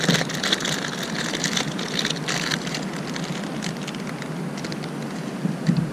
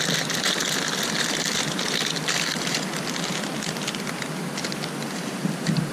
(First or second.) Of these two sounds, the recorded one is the first